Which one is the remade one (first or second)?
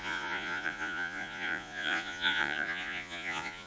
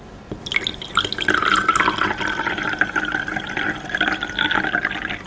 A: first